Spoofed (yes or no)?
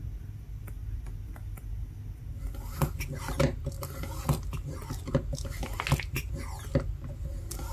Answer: no